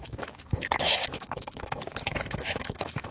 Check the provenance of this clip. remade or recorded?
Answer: remade